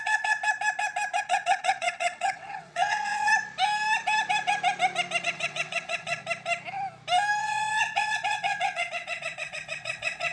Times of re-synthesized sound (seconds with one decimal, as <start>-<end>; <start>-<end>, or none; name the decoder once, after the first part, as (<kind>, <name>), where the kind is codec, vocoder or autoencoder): 0.0-0.4 (vocoder, WaveNeXt); 1.2-3.3; 5.2-6.2; 7.4-10.3